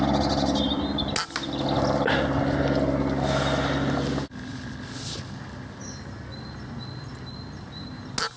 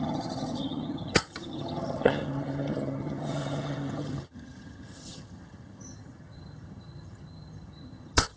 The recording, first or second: first